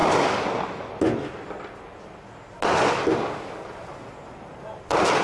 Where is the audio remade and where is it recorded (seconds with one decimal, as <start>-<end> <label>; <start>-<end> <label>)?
0.0-5.2 recorded